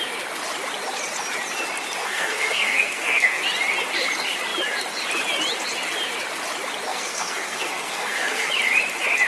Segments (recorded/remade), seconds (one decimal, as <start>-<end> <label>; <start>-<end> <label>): 0.0-2.0 recorded; 2.0-3.4 remade; 3.4-6.9 recorded; 6.9-8.5 remade; 8.5-9.3 recorded